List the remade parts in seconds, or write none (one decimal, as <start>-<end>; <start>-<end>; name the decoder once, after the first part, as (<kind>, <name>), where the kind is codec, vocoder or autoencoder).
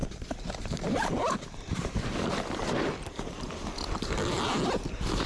0.0-2.9 (vocoder, BigVGAN v2)